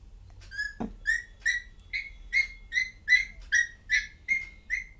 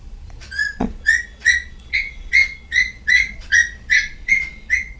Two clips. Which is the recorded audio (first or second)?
first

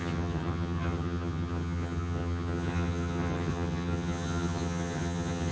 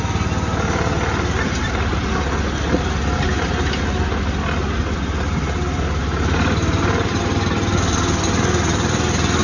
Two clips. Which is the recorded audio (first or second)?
second